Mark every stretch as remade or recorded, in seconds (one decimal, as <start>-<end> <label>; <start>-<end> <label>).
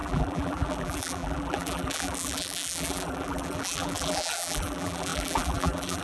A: 0.0-6.0 remade